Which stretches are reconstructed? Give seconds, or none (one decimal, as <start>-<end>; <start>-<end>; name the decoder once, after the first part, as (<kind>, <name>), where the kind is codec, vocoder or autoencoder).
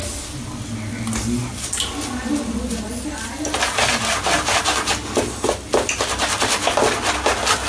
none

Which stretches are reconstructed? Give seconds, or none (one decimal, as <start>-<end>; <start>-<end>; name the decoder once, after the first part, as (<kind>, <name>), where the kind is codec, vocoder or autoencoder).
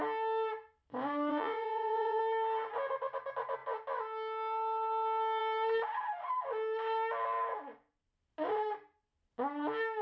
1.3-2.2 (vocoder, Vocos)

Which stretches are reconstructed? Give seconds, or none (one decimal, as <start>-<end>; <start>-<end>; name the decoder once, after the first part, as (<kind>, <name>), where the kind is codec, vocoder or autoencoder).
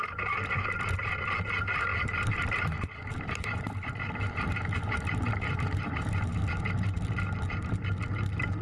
1.9-6.4 (vocoder, BigVGAN v2)